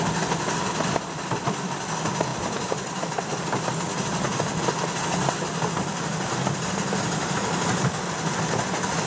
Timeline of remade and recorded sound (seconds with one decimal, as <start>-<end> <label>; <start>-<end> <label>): 0.0-9.1 recorded